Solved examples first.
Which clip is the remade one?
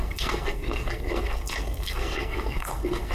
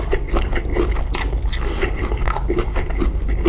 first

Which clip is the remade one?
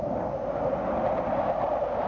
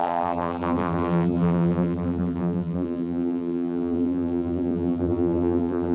second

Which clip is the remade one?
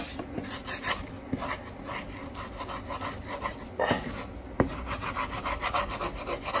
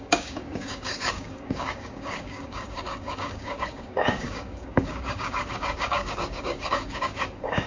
second